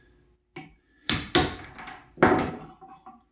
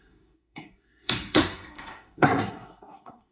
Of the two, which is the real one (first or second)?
first